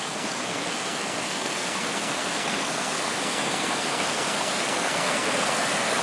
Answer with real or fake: fake